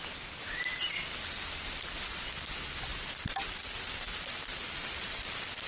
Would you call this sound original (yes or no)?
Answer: yes